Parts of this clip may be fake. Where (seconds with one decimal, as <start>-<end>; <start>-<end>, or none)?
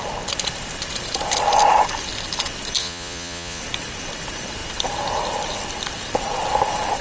2.8-3.6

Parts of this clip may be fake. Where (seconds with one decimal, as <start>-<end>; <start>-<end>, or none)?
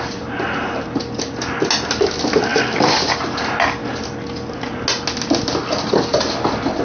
none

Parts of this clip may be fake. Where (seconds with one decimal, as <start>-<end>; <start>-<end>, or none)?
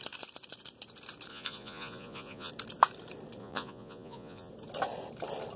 1.3-2.5; 3.4-4.5